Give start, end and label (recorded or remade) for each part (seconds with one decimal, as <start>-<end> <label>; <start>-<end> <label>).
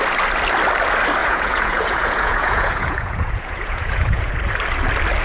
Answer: 0.0-1.2 recorded; 1.2-4.3 remade; 4.3-5.2 recorded